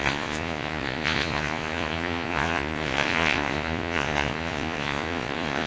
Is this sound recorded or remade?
remade